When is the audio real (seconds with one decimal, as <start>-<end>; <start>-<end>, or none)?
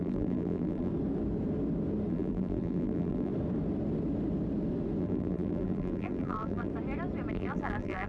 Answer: 0.9-2.1; 3.3-5.0; 6.7-7.3